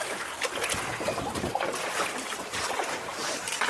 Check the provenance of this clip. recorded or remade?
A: recorded